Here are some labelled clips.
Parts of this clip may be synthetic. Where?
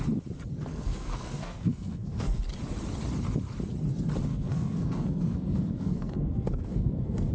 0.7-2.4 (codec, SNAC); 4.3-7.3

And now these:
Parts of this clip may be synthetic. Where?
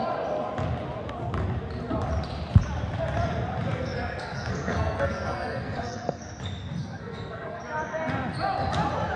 3.7-6.2 (codec, SNAC); 6.8-7.6